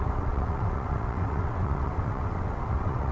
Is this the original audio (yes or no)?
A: no